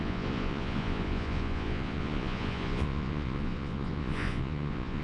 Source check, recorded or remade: remade